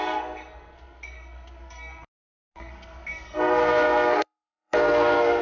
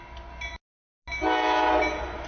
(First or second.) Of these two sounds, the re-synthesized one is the first